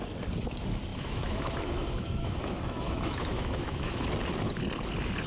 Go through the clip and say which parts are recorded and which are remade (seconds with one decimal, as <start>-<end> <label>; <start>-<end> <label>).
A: 0.0-0.9 recorded; 0.9-4.1 remade; 4.1-5.3 recorded